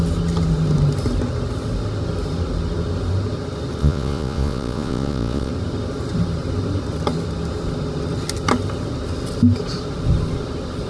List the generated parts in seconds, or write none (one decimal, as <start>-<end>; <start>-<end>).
3.8-5.5